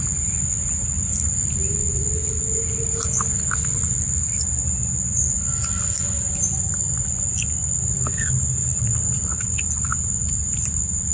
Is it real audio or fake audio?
real